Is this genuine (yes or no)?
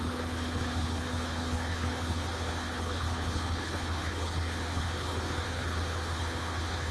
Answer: no